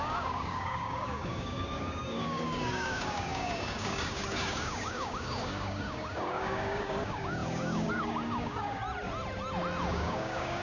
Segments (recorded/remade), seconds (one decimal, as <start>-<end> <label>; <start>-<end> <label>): 0.0-8.8 remade; 8.8-9.9 recorded; 9.9-10.6 remade